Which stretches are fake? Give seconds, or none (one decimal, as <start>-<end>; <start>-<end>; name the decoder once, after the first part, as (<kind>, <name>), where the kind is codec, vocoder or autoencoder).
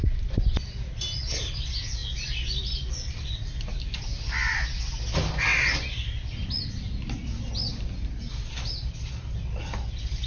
none